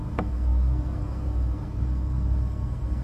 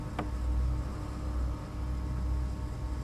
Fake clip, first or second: first